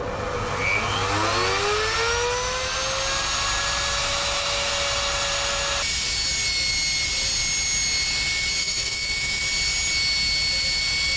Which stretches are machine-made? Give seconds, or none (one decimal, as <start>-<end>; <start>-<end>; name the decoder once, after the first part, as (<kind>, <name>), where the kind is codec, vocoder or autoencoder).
4.0-4.7 (autoencoder, DAC-VAE); 8.6-9.4